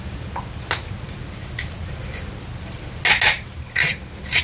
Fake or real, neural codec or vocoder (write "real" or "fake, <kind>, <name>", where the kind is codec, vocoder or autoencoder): real